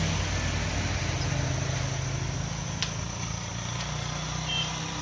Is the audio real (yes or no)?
yes